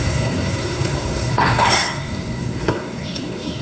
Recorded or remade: remade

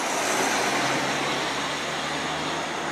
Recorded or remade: recorded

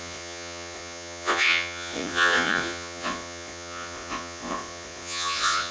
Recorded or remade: remade